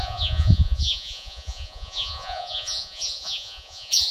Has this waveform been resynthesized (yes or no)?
yes